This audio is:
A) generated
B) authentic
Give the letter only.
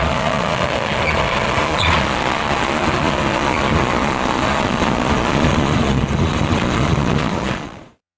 A